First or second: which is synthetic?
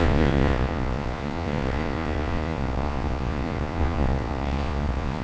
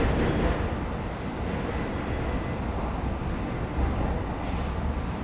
first